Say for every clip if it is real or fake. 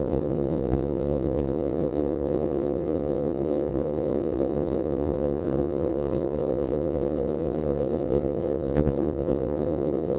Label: fake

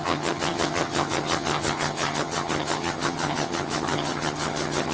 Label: fake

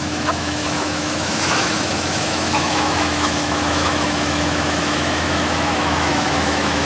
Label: fake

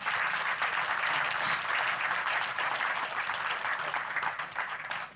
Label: real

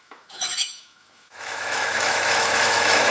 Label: fake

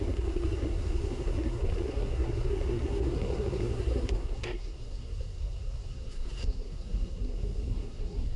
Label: fake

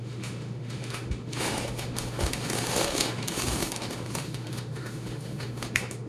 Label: fake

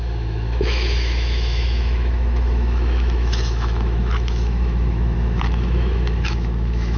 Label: fake